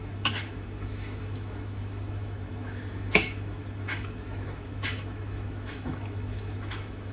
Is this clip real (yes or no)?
no